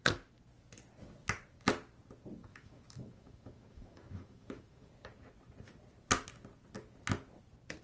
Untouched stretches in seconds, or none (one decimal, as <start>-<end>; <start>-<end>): 0.0-2.4; 4.9-7.8